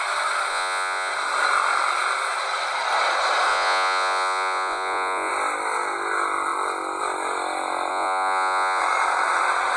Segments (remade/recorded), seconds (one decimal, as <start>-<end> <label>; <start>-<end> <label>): 0.0-0.5 recorded; 0.5-1.1 remade; 1.1-3.5 recorded; 3.5-5.3 remade; 5.3-7.9 recorded; 7.9-8.8 remade; 8.8-9.8 recorded